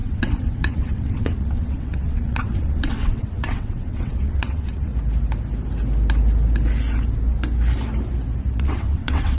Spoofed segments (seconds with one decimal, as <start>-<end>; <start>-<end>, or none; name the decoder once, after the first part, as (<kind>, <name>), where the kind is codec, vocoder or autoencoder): 0.0-4.9 (vocoder, WaveNeXt); 8.6-9.4